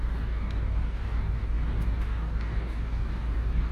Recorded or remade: remade